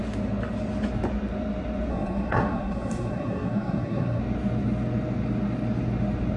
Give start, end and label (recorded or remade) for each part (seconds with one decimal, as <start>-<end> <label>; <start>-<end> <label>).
0.0-1.9 recorded; 1.9-4.2 remade; 4.2-6.4 recorded